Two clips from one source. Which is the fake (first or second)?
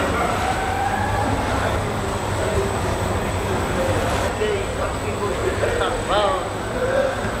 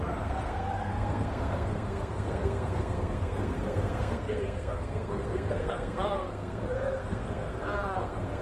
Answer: second